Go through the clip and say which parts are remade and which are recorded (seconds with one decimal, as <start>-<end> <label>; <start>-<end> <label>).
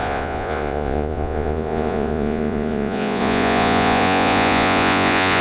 0.0-5.4 remade